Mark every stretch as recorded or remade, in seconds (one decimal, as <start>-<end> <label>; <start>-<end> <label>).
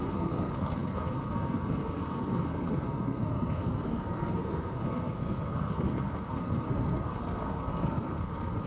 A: 0.0-8.7 remade